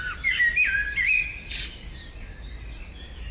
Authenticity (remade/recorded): recorded